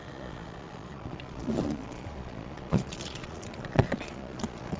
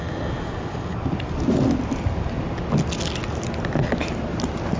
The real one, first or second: second